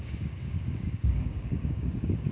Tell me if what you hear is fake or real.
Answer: fake